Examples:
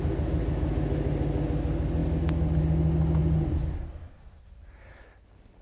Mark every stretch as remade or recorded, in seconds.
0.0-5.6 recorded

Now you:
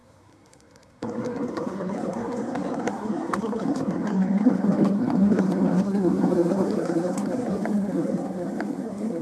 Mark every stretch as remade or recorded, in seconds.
0.0-9.2 remade